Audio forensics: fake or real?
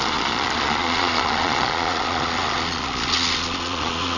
fake